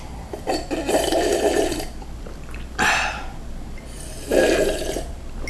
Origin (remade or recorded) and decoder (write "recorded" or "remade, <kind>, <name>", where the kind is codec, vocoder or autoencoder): remade, vocoder, BigVGAN v2